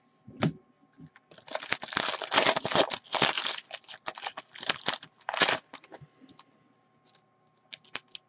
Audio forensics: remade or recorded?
recorded